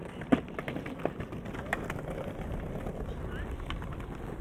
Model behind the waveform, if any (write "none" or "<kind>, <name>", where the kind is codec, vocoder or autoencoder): none